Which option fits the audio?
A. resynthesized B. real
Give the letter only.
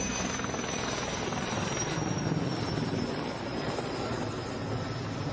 B